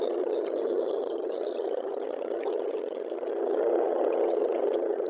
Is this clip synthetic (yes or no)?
yes